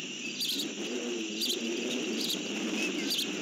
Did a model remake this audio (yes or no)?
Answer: no